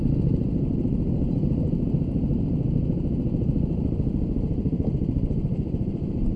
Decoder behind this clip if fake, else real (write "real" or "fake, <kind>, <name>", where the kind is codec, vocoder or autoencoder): fake, vocoder, BigVGAN v2